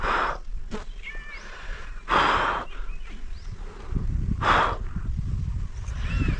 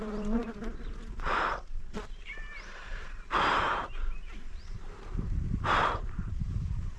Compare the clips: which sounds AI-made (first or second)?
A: second